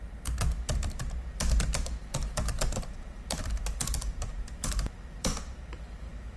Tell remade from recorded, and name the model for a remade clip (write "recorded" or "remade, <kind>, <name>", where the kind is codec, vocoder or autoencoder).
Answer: remade, vocoder, BigVGAN v2